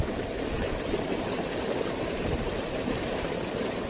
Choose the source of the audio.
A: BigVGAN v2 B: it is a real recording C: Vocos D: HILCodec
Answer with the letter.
A